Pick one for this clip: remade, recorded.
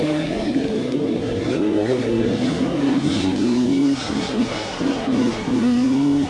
remade